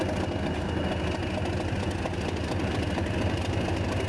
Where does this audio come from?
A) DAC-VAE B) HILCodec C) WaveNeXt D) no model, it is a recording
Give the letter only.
D